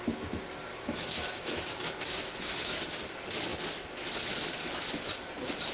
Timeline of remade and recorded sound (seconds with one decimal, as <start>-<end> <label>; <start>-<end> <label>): 0.0-0.7 recorded; 0.7-2.8 remade; 2.8-5.7 recorded